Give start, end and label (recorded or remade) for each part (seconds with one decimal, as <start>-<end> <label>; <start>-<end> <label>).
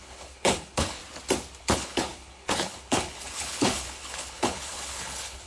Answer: 0.0-1.0 remade; 1.0-1.6 recorded; 1.6-5.5 remade